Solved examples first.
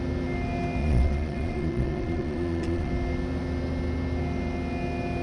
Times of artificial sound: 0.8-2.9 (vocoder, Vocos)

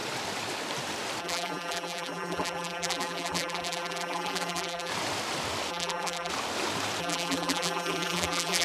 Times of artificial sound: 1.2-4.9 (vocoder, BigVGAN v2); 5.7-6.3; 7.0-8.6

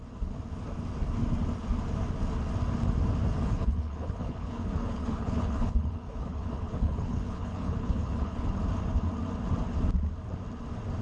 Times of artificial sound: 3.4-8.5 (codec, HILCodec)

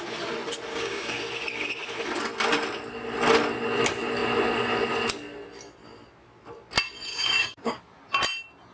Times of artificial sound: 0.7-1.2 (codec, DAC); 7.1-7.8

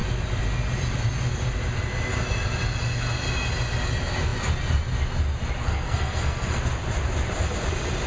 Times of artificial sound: 5.6-6.6 (codec, SNAC)

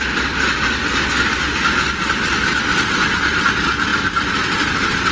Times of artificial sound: 3.9-5.1 (vocoder, BigVGAN v2)